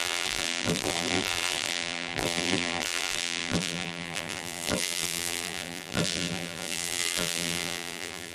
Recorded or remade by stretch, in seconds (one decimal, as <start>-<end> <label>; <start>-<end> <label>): 0.0-8.3 remade